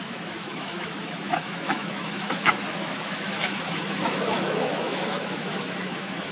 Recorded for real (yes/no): no